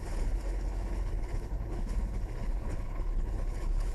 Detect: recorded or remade remade